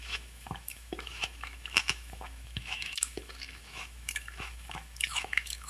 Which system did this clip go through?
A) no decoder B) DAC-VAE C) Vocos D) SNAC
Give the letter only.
B